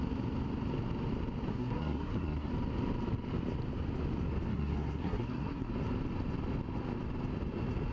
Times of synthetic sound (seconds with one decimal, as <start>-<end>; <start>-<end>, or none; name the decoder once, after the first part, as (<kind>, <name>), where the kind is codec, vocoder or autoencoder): 1.5-2.5 (codec, SNAC); 4.5-5.7